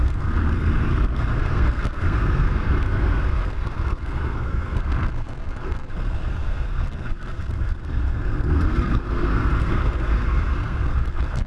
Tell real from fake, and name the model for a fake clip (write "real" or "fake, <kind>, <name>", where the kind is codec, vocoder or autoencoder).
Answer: fake, codec, SNAC